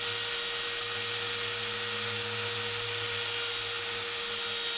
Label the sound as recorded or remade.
recorded